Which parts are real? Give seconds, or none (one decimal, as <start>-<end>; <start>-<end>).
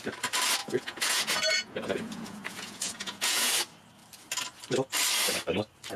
0.0-0.6; 3.5-6.0